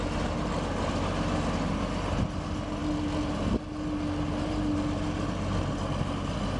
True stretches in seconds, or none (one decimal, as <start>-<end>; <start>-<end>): 0.0-6.6